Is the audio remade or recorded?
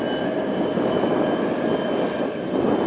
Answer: remade